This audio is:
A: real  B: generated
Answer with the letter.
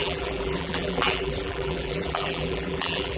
B